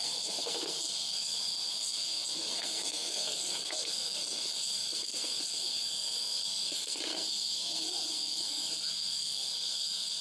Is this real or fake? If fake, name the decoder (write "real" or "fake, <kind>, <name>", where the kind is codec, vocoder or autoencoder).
fake, codec, SNAC